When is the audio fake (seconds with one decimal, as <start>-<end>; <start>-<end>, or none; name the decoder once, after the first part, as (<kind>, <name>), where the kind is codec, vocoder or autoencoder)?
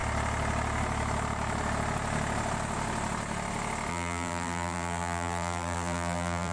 3.9-6.5 (vocoder, BigVGAN v2)